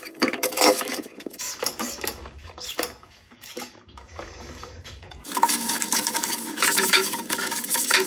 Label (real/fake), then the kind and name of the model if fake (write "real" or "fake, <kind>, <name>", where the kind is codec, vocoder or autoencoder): fake, codec, DAC